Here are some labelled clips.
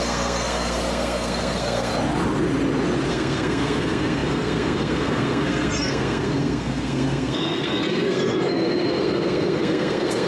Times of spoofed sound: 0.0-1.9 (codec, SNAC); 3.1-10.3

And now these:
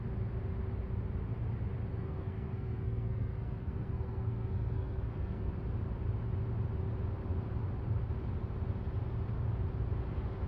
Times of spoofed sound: 1.9-5.5 (codec, SNAC)

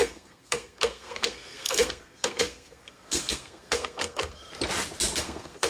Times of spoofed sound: 0.0-4.5 (codec, SNAC); 5.2-5.7